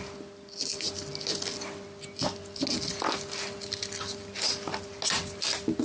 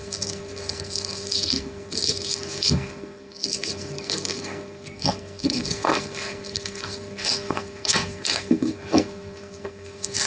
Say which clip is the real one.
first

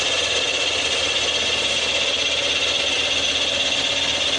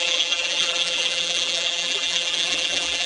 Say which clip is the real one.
first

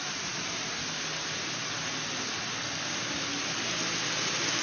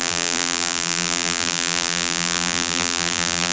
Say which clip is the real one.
first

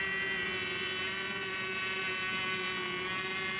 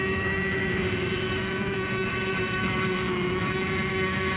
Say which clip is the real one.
first